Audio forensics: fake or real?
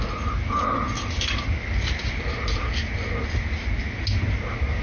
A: real